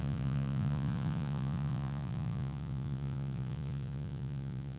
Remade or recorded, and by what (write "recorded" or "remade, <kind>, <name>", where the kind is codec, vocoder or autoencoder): remade, vocoder, Vocos